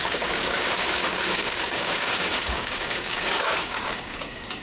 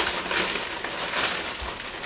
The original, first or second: second